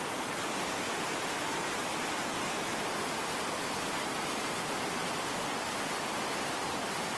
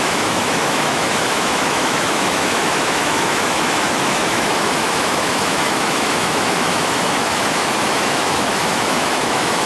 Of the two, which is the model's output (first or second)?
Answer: second